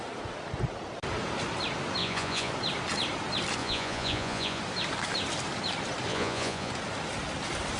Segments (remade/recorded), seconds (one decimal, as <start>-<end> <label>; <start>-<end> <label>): 0.0-2.0 recorded; 2.0-2.5 remade; 2.5-3.6 recorded; 3.6-4.6 remade; 4.6-6.1 recorded; 6.1-6.7 remade; 6.7-7.8 recorded